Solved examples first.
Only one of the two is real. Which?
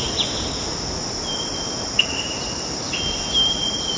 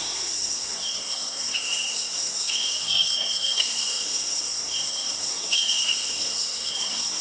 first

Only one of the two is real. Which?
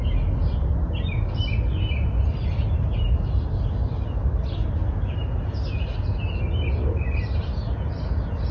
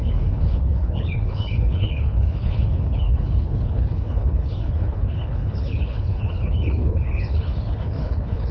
first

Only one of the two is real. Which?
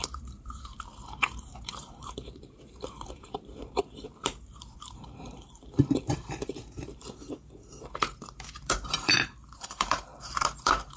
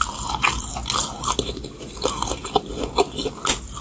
second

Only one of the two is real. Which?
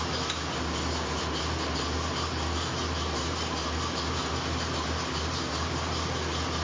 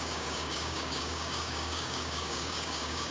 first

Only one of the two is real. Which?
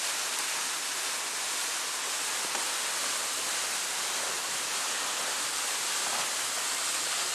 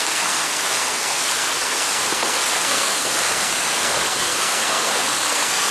first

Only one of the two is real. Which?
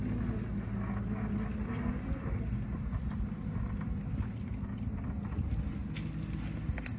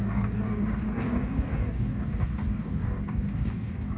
first